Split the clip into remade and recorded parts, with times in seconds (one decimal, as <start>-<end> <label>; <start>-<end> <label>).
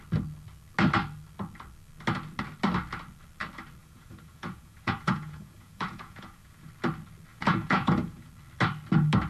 0.0-3.8 recorded; 3.8-6.7 remade; 6.7-7.3 recorded; 7.3-8.3 remade; 8.3-9.3 recorded